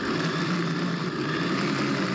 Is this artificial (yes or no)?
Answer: no